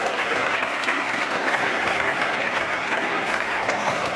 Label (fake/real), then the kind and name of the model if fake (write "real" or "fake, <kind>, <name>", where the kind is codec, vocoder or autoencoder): fake, codec, SNAC